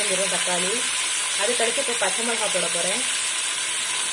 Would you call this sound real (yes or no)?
yes